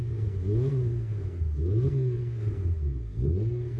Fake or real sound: fake